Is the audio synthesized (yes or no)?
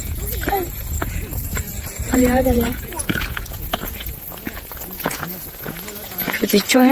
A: yes